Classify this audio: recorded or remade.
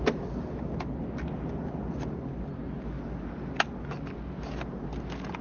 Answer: recorded